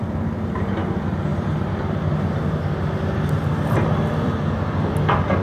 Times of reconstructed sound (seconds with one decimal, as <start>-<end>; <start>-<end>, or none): 1.3-4.5